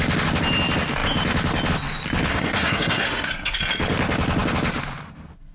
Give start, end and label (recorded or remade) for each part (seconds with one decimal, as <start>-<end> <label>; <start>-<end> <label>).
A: 0.0-2.3 recorded; 2.3-3.6 remade; 3.6-5.5 recorded